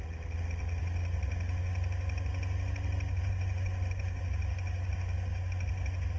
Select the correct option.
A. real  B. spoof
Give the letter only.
A